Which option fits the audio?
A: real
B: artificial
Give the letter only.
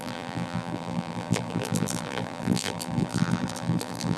B